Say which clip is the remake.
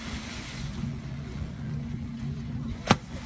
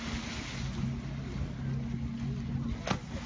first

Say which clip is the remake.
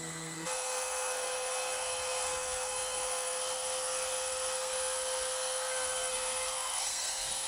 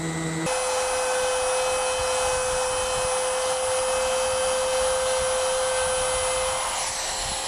first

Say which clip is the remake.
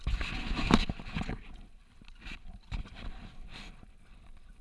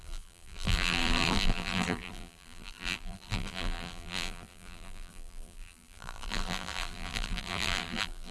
second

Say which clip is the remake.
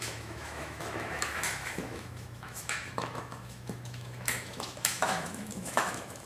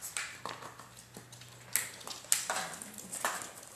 first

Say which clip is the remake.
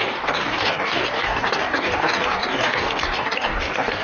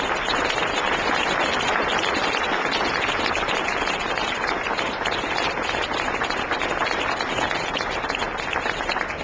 first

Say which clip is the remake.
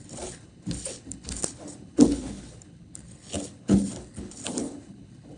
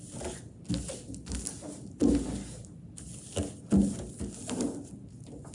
first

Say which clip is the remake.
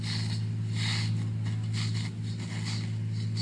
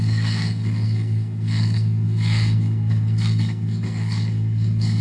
second